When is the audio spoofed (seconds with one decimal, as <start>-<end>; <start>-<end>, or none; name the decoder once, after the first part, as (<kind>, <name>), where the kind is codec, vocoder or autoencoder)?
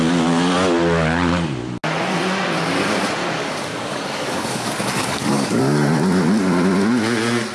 3.2-5.6 (codec, DAC)